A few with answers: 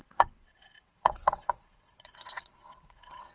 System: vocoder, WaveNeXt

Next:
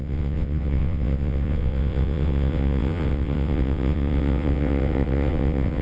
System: vocoder, WaveNeXt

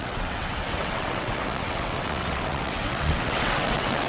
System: vocoder, WaveNeXt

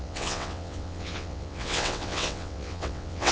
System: vocoder, WaveNeXt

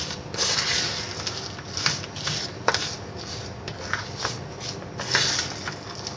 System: none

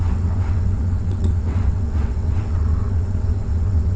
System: vocoder, WaveNeXt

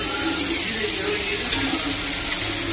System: none